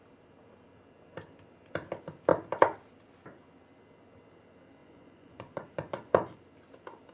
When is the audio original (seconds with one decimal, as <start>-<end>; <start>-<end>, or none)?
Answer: 0.0-4.8; 6.4-7.1